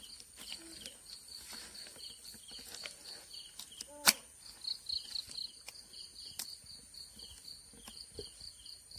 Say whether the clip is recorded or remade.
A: recorded